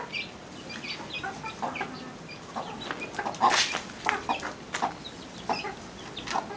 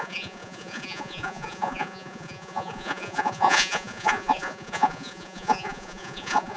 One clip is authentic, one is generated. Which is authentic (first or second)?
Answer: first